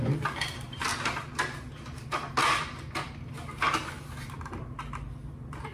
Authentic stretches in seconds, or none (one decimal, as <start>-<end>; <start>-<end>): 0.0-5.7